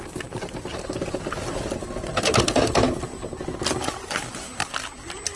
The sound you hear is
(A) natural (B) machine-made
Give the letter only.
A